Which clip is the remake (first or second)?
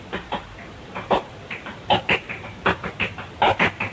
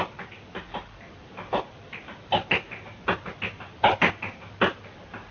first